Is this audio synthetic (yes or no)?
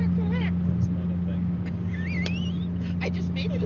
no